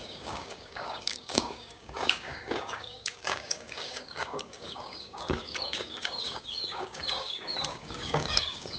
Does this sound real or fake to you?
fake